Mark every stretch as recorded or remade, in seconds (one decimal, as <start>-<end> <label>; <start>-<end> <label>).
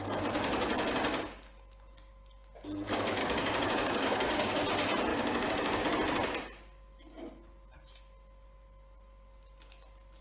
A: 0.0-3.2 recorded; 3.2-4.5 remade; 4.5-5.1 recorded; 5.1-5.8 remade; 5.8-10.2 recorded